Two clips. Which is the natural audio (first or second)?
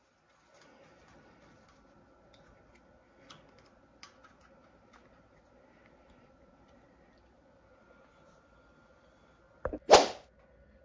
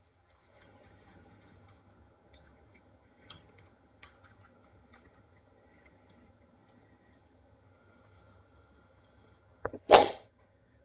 first